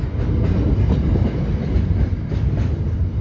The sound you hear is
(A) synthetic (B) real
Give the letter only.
B